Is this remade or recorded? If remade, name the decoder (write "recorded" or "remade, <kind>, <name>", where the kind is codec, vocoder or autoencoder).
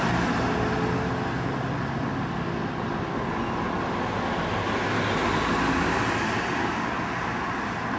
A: recorded